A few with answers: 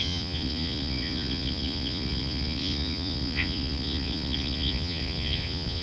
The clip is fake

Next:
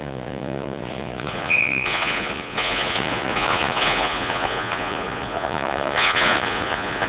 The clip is fake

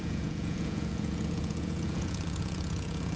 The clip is fake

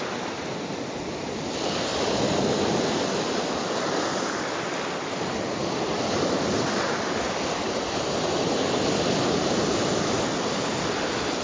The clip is real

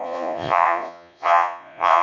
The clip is fake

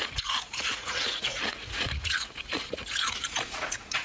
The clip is fake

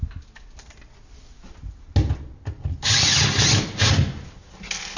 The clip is real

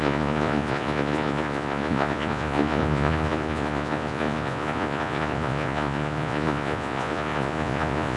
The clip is fake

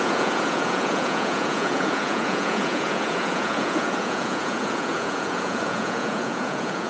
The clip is fake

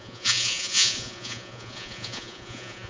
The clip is fake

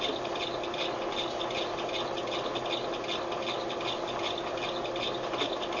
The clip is real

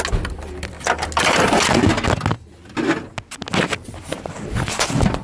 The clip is real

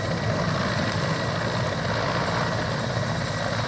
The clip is real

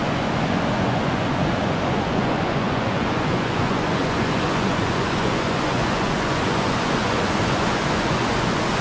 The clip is fake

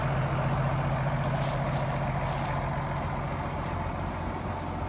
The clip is real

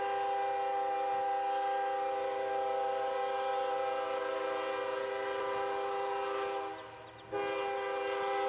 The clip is real